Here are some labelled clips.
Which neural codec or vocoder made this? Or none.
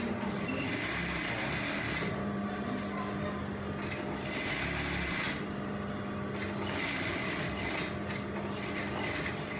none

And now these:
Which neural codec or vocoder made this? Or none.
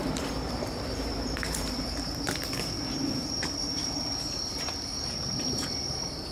vocoder, BigVGAN v2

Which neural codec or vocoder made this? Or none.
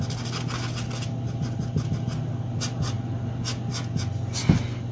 none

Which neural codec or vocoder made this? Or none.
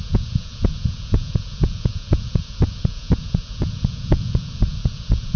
vocoder, Vocos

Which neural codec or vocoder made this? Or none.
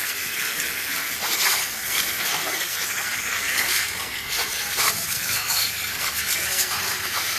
codec, SNAC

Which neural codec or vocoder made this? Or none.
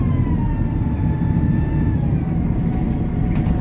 none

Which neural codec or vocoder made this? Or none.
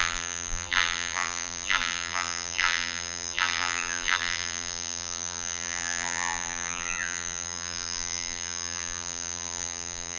vocoder, BigVGAN v2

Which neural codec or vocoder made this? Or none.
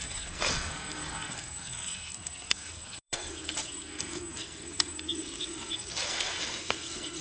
codec, SNAC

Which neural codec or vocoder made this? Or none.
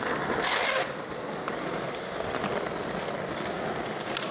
none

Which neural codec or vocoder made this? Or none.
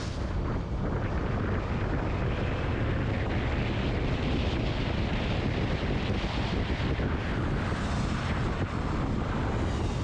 none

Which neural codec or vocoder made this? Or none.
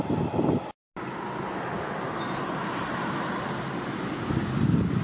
none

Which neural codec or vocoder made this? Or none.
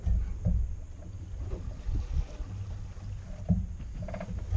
none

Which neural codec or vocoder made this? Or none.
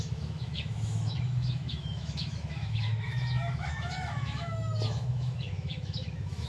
autoencoder, DAC-VAE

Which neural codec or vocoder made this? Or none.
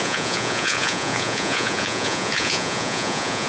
vocoder, Vocos